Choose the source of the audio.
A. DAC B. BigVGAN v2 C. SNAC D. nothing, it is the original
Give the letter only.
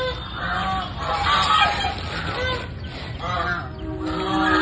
D